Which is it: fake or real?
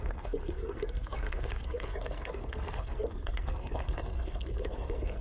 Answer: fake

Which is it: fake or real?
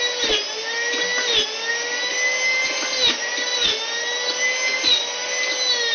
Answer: real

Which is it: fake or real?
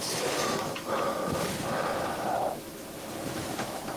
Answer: fake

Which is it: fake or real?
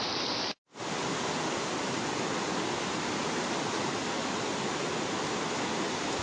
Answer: real